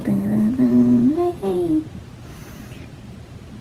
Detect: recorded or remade remade